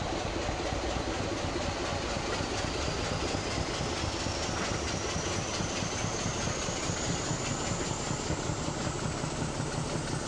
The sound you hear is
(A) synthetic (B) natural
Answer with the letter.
B